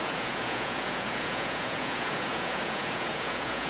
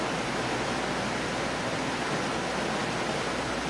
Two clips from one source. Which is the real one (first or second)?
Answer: second